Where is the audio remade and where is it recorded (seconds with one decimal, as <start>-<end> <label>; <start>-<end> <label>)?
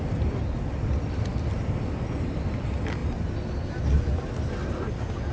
0.0-5.3 recorded